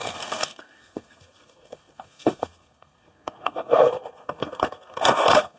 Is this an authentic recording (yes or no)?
no